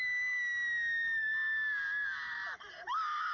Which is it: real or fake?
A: real